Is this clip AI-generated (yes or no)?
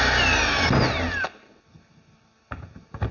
no